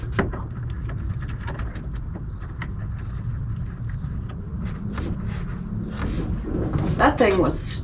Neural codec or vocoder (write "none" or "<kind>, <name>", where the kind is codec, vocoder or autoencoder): none